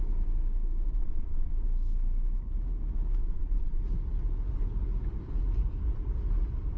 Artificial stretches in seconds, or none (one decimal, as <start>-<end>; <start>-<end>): 1.0-1.5; 3.2-3.8